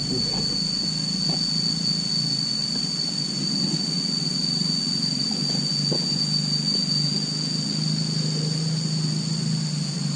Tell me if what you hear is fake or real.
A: real